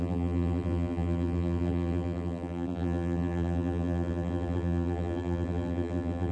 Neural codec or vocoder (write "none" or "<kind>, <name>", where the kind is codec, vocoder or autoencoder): vocoder, BigVGAN v2